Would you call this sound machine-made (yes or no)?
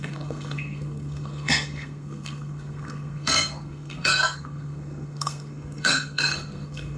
yes